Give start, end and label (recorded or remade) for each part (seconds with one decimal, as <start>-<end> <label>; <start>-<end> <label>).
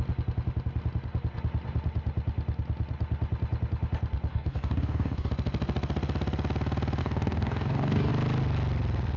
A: 0.0-4.3 recorded; 4.3-5.3 remade; 5.3-7.0 recorded; 7.0-8.1 remade; 8.1-9.2 recorded